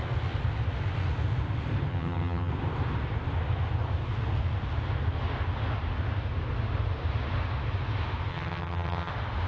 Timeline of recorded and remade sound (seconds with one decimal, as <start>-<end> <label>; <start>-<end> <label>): 0.0-1.9 recorded; 1.9-2.5 remade; 2.5-8.3 recorded; 8.3-9.1 remade; 9.1-9.5 recorded